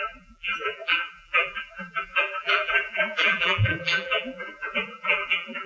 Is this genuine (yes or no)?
no